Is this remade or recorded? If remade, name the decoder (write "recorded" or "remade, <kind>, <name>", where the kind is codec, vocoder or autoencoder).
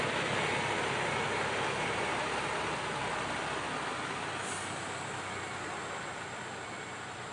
recorded